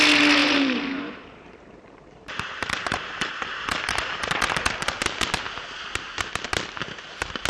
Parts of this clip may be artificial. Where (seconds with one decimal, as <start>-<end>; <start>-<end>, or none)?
0.4-4.4